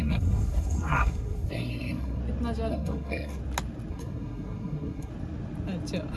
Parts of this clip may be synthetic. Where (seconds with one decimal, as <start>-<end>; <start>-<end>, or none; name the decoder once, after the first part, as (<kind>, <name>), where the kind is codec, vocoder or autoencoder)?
0.0-2.2 (codec, SNAC); 2.7-3.4; 3.9-5.1